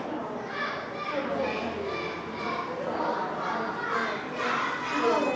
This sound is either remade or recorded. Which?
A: recorded